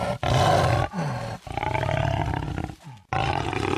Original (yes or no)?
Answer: yes